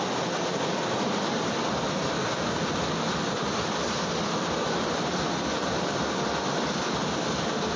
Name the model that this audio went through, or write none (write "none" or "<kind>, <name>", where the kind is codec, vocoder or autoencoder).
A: none